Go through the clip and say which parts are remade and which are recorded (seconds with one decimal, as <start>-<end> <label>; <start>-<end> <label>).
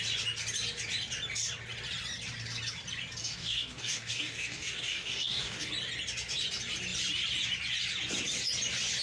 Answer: 0.0-3.2 recorded; 3.2-5.7 remade; 5.7-9.0 recorded